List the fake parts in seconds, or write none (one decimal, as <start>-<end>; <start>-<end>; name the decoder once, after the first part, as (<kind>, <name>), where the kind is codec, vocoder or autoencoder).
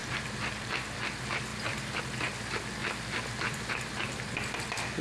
0.0-0.7 (vocoder, BigVGAN v2); 1.5-2.0